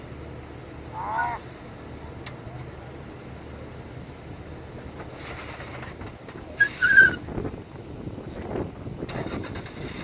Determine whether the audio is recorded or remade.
recorded